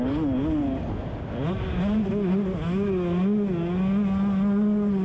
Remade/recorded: recorded